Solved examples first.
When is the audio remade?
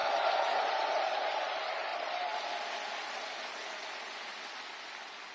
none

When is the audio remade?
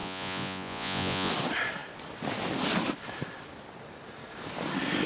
0.0-1.3 (vocoder, Vocos)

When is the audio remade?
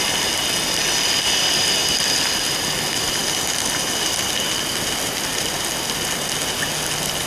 none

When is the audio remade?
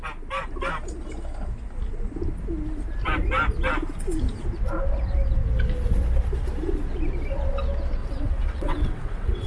8.0-9.5 (vocoder, WaveNeXt)